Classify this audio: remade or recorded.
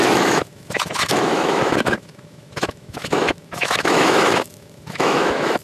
remade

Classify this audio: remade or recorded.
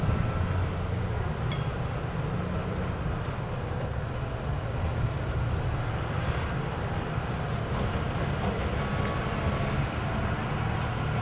recorded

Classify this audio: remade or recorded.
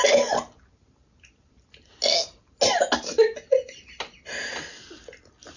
recorded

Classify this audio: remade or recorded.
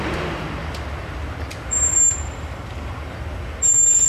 recorded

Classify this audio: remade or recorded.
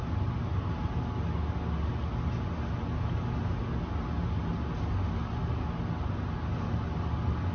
recorded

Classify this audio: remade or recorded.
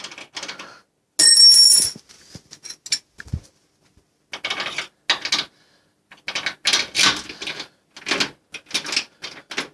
recorded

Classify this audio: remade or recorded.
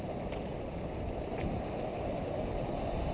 recorded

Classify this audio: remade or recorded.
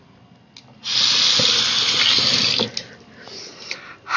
recorded